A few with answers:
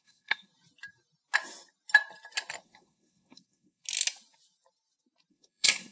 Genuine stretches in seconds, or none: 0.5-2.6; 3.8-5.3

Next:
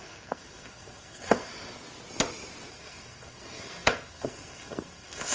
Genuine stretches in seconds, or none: 1.5-2.7

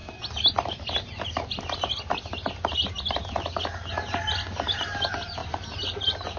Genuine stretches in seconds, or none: 0.0-6.4

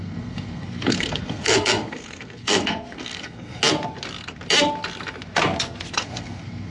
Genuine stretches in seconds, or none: 3.6-5.9